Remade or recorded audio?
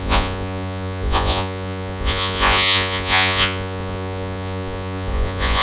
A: remade